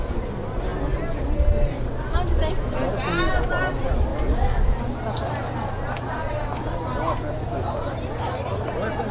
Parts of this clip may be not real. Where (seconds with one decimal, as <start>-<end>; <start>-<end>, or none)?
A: none